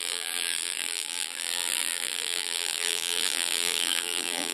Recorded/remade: remade